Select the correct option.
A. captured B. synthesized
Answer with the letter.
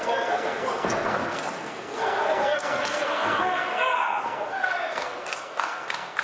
B